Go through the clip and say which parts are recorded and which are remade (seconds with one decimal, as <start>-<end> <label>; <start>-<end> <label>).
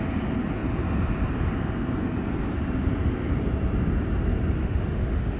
0.0-4.6 recorded; 4.6-5.4 remade